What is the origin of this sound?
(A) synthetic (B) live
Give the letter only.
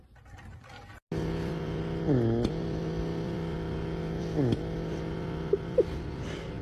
B